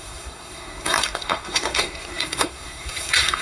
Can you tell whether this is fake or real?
fake